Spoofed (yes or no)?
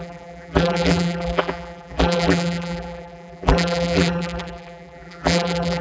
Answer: yes